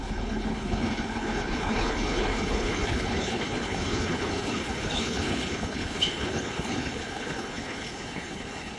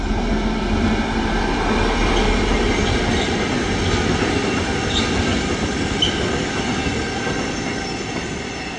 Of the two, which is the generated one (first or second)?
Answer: first